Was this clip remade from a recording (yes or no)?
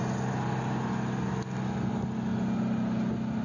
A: no